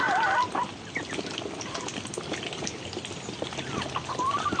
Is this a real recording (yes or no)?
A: yes